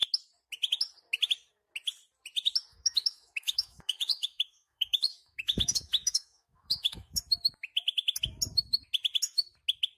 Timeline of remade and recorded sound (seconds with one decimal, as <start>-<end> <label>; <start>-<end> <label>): 0.0-2.7 recorded; 2.7-7.2 remade; 7.2-10.0 recorded

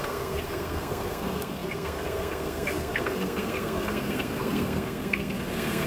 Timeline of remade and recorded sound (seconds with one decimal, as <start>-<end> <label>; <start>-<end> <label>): 0.0-5.9 remade

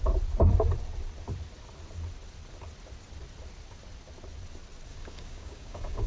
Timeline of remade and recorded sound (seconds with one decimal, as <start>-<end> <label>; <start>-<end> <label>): 0.0-4.9 recorded; 4.9-6.1 remade

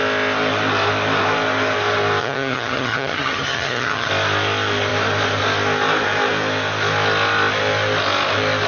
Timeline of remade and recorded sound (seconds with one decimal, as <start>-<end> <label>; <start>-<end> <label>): 0.0-2.2 recorded; 2.2-4.1 remade; 4.1-8.7 recorded

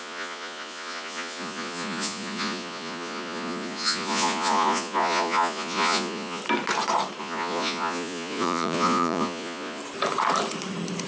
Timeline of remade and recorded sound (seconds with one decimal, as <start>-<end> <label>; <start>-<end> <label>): 0.0-6.4 remade; 6.4-7.2 recorded; 7.2-9.8 remade; 9.8-11.1 recorded